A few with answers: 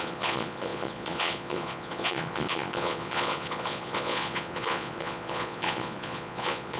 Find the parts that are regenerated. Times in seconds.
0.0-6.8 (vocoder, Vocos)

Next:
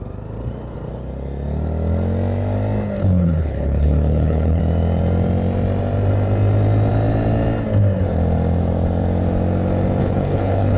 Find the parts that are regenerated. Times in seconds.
3.0-4.6 (codec, HILCodec); 10.0-10.8

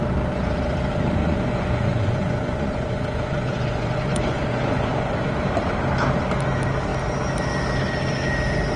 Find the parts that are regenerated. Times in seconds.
1.2-5.1 (vocoder, Vocos)

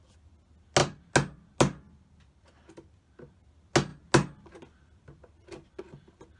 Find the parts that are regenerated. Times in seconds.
none

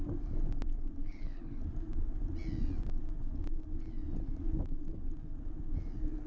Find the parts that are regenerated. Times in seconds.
1.0-1.6 (codec, HILCodec)

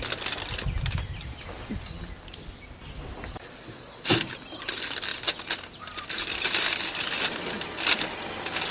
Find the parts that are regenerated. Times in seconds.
none

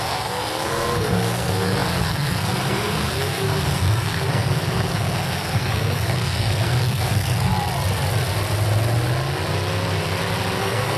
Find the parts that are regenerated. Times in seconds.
0.0-7.5 (codec, SNAC); 10.6-11.0